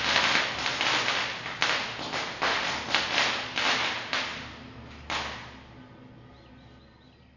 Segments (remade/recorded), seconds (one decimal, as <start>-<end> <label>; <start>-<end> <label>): 0.0-7.4 recorded